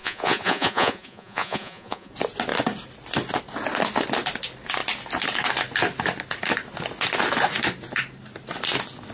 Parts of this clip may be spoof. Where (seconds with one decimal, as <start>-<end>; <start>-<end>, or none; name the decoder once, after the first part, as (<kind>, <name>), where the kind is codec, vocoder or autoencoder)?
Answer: 0.0-2.1 (vocoder, Vocos)